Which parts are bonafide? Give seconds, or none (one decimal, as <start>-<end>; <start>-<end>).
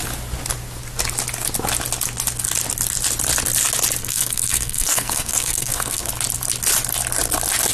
0.0-4.0; 6.1-7.7